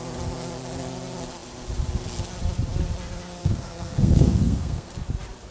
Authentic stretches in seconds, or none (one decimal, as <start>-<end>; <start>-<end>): 0.0-3.4; 4.9-5.5